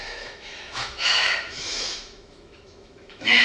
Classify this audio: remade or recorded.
remade